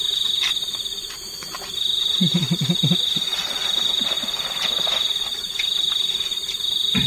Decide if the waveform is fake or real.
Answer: real